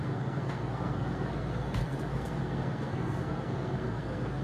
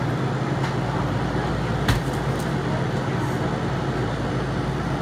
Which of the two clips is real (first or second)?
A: second